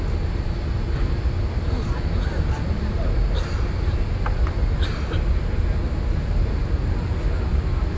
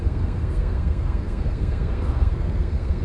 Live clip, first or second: first